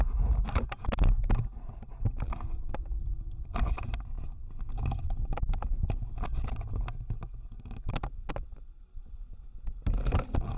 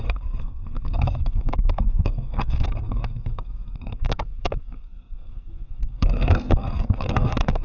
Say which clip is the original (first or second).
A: first